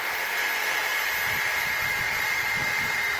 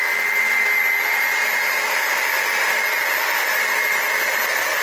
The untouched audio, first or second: second